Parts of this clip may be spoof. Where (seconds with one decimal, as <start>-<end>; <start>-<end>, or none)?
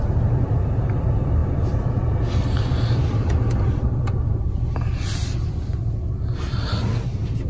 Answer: none